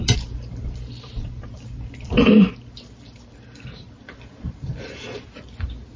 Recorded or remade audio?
remade